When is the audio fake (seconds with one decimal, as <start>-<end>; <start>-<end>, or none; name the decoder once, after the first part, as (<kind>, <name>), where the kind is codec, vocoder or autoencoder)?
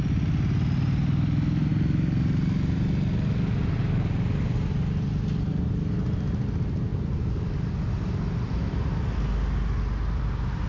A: none